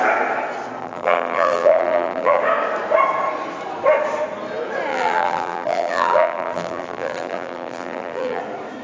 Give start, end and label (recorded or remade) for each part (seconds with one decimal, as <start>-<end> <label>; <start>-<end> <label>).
0.0-0.8 recorded; 0.8-2.4 remade; 2.4-4.9 recorded; 4.9-8.4 remade; 8.4-8.8 recorded